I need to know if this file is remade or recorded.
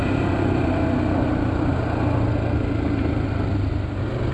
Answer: recorded